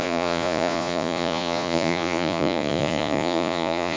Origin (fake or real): fake